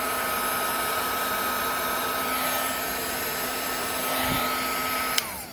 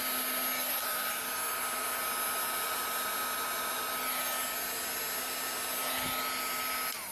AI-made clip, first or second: first